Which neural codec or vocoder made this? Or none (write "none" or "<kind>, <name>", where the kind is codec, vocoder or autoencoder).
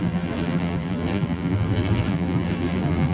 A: vocoder, BigVGAN v2